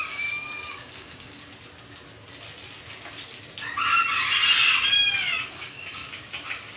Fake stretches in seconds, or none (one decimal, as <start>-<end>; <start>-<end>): 0.0-1.4; 5.5-6.0